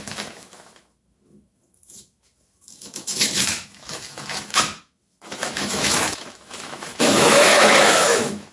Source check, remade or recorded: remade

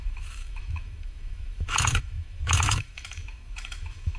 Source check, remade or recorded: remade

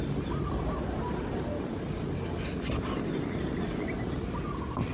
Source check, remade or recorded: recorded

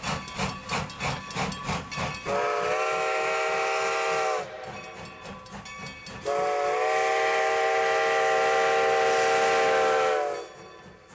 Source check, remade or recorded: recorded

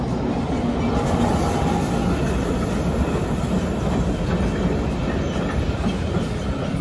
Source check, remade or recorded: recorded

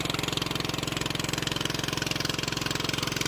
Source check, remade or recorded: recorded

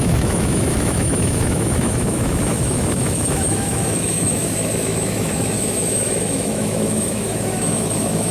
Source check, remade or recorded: remade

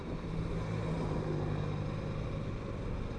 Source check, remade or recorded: recorded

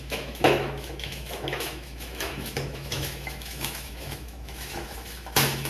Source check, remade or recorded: remade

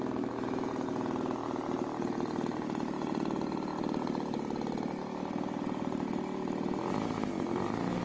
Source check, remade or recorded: recorded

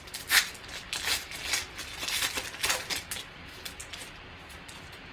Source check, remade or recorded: recorded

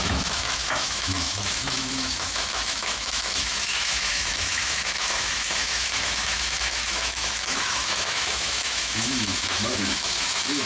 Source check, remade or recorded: remade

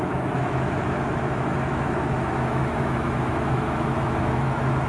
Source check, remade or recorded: remade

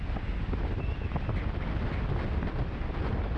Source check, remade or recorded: recorded